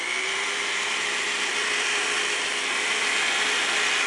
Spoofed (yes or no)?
no